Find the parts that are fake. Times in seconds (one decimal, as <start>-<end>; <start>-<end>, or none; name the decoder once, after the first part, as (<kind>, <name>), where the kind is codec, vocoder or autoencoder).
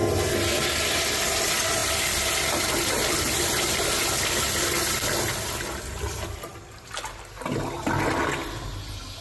none